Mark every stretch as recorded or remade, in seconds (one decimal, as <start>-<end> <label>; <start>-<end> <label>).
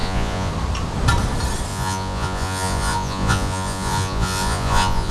0.0-0.5 remade; 0.5-1.7 recorded; 1.7-5.1 remade